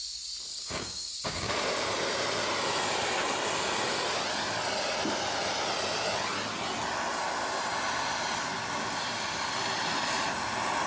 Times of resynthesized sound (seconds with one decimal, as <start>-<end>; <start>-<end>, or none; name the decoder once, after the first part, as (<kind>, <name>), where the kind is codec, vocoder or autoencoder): 0.5-1.5 (codec, DAC)